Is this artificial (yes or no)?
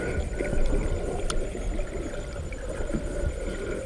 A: no